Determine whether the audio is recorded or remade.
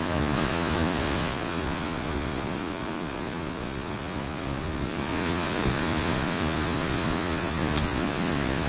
remade